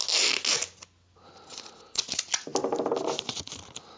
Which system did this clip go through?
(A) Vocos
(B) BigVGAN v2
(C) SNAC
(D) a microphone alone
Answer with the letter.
D